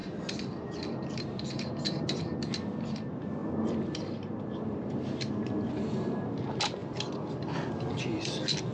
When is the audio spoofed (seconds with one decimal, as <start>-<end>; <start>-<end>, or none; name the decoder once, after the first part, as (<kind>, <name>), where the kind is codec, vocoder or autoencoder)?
0.0-2.2 (vocoder, BigVGAN v2); 6.8-8.7